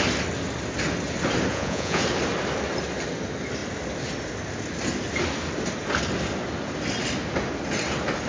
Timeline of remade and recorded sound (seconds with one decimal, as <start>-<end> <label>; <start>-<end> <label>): 0.0-1.5 recorded; 1.5-2.0 remade; 2.0-8.3 recorded